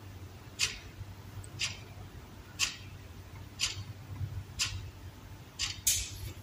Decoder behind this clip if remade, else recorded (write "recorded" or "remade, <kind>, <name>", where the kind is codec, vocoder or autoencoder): recorded